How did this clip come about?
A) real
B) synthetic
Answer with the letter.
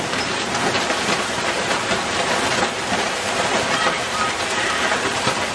B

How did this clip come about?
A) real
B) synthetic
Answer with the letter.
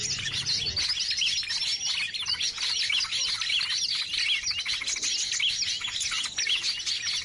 A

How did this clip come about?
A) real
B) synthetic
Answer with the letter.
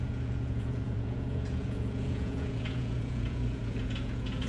B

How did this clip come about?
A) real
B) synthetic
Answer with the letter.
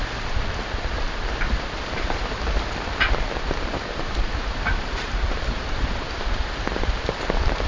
B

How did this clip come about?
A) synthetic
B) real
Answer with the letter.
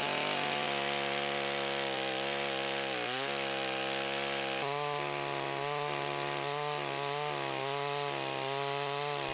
B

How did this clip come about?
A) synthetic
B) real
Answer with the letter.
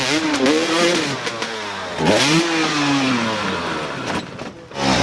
B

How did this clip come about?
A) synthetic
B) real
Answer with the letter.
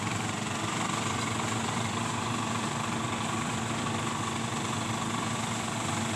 B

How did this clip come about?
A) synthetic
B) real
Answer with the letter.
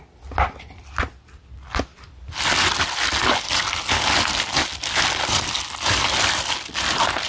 B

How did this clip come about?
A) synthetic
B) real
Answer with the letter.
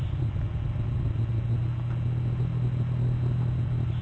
B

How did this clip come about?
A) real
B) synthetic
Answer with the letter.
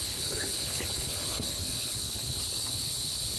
B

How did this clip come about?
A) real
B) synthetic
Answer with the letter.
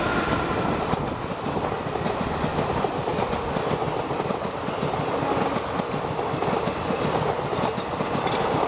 A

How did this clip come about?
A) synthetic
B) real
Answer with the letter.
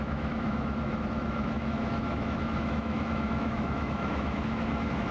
A